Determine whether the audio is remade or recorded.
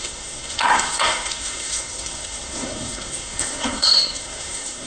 remade